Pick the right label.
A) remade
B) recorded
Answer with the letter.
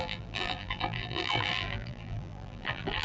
A